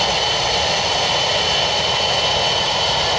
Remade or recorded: recorded